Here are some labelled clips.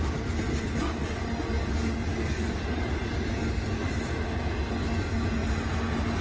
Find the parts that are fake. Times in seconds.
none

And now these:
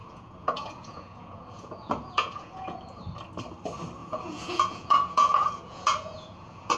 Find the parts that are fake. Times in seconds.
0.0-3.0 (vocoder, Vocos); 4.0-6.8

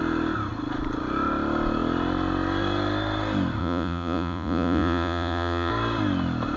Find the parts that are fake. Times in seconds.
3.6-5.7 (vocoder, Vocos)

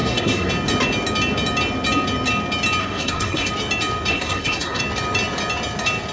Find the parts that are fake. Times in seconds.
0.0-0.5 (codec, SNAC); 2.8-3.5; 4.1-4.8

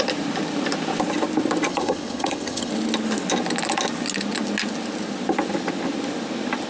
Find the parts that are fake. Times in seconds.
1.7-2.7 (vocoder, HiFi-GAN)

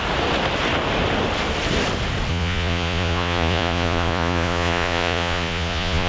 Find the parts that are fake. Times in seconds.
2.3-6.1 (vocoder, Vocos)